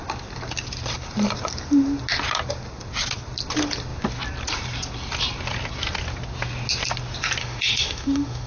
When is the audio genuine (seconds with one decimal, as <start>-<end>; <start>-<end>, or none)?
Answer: 0.0-7.4